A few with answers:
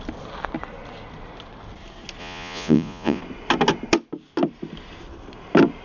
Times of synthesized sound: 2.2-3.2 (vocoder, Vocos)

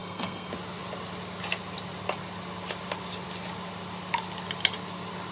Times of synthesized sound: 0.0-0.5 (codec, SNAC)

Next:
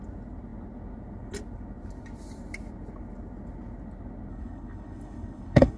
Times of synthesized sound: 4.3-5.8 (codec, HILCodec)

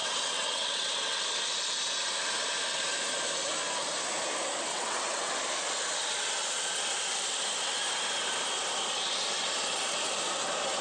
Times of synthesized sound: 0.0-1.2 (vocoder, WaveNeXt); 4.7-5.3